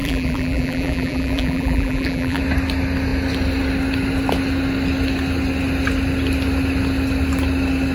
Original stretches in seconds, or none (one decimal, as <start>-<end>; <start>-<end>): 2.4-7.9

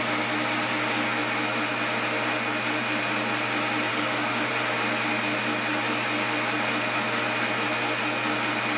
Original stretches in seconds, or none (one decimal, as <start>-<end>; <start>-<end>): 0.0-3.9; 4.5-8.8

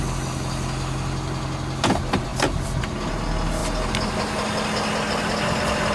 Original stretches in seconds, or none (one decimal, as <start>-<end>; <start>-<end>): 0.0-5.9

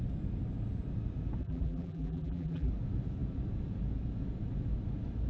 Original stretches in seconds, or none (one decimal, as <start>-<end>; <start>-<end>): 0.0-1.4; 2.7-5.3

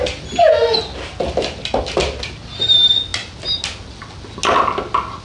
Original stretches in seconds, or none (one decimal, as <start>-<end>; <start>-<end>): 0.0-5.2

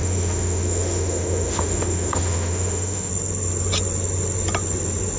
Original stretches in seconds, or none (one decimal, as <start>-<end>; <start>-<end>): 3.1-5.2

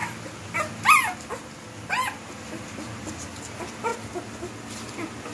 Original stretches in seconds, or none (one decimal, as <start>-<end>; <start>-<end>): 0.0-2.2; 3.9-4.7